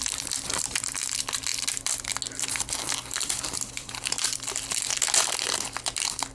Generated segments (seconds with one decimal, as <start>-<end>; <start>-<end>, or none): 0.0-1.5; 2.5-4.9; 5.4-6.3

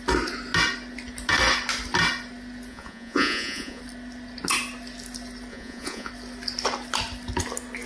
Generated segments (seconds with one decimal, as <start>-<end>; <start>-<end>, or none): 2.7-3.8; 5.5-6.1

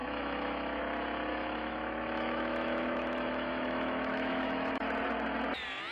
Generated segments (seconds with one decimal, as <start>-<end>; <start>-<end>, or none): 0.0-0.8; 1.3-4.8

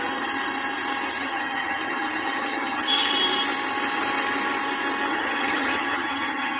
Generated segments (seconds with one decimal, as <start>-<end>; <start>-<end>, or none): 1.2-3.1; 5.1-6.6

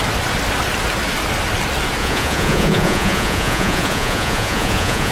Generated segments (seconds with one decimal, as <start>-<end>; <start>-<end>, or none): 2.0-5.1

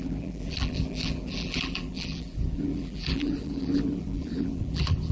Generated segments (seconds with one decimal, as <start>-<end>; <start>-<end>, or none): 0.0-5.1

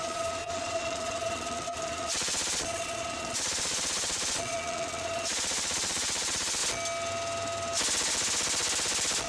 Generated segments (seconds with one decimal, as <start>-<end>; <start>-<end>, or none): 0.0-6.6

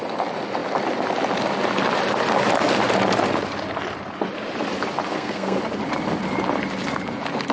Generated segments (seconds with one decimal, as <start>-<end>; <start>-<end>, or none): 5.1-5.6